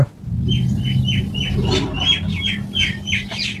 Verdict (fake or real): real